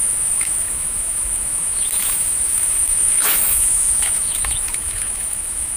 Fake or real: fake